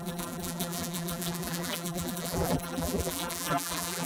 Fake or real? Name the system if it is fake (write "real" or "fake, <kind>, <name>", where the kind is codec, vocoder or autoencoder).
fake, vocoder, BigVGAN v2